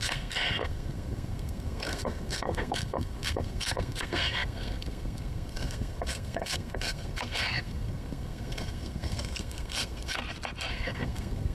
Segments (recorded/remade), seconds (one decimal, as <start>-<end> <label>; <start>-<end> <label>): 0.0-10.2 remade; 10.2-10.7 recorded; 10.7-11.5 remade